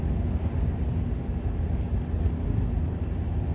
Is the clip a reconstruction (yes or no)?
no